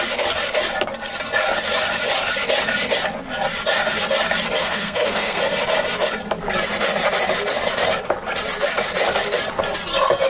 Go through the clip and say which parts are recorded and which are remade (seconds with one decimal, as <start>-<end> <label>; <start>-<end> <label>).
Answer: 0.0-4.6 recorded; 4.6-5.4 remade; 5.4-10.3 recorded